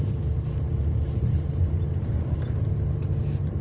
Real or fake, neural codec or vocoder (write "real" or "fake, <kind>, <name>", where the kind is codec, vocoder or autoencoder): fake, vocoder, BigVGAN v2